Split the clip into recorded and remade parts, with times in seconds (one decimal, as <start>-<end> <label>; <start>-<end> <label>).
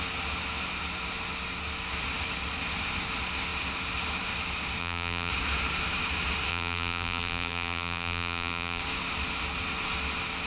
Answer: 0.0-4.8 recorded; 4.8-5.3 remade; 5.3-6.5 recorded; 6.5-8.8 remade; 8.8-10.5 recorded